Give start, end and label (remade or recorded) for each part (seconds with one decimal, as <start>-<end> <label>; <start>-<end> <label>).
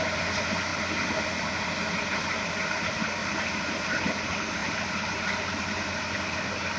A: 0.0-3.2 recorded; 3.2-3.7 remade; 3.7-4.6 recorded; 4.6-6.8 remade